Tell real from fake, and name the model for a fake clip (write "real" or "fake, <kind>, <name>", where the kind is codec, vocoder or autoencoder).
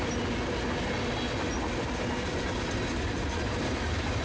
real